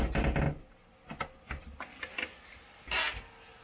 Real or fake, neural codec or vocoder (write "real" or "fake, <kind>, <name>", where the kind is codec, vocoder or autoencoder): real